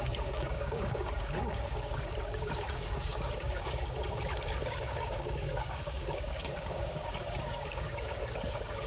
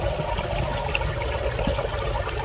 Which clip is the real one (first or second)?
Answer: second